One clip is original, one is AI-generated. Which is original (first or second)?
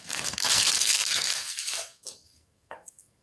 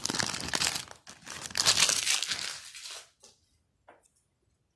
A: second